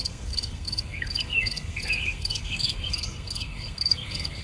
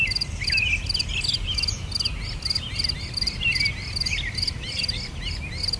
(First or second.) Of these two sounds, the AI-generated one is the first